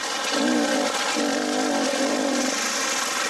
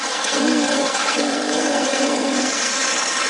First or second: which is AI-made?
second